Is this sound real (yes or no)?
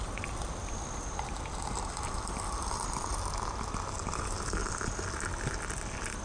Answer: yes